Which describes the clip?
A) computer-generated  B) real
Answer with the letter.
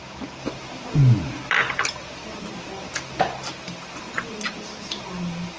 B